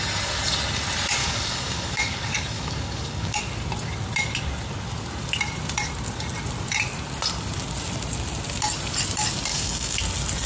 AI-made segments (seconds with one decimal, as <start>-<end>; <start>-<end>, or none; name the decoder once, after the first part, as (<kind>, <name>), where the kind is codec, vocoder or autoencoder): 1.2-3.4 (codec, DAC); 9.5-10.0